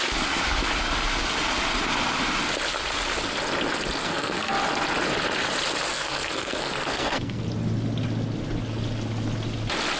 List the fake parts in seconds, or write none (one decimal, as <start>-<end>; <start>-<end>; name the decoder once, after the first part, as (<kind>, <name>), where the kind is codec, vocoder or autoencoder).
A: 4.0-4.5 (codec, SNAC); 5.9-7.4